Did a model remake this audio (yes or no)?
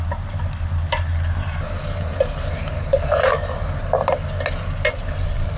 no